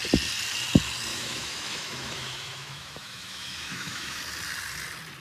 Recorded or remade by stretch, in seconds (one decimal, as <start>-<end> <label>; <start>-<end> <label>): 0.0-1.1 recorded; 1.1-4.2 remade; 4.2-5.2 recorded